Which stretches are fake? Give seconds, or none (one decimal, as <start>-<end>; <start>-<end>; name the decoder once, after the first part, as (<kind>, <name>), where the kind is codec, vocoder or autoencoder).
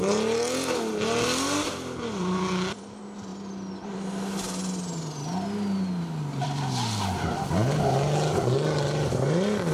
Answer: none